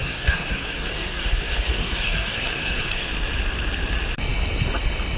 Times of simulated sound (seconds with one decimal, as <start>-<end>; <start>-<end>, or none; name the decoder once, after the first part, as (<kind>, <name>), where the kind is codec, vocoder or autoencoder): 0.0-3.1 (codec, SNAC)